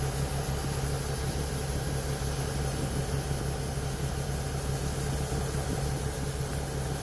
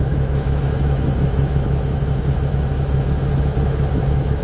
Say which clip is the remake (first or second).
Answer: second